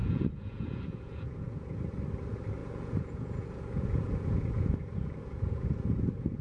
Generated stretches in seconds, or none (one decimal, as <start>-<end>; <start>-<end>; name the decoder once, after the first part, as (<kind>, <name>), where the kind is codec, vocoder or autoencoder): 0.0-1.8 (vocoder, Vocos); 2.6-6.4